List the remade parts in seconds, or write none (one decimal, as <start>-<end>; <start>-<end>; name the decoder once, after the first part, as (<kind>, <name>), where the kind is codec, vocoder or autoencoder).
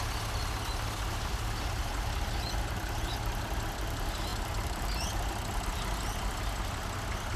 none